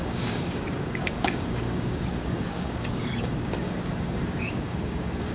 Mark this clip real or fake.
fake